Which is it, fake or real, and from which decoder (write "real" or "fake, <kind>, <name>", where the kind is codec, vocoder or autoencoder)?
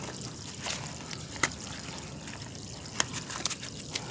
real